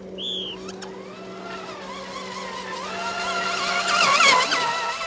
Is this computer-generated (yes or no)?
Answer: no